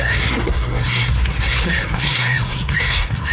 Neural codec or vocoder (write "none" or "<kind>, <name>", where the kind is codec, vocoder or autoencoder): codec, SNAC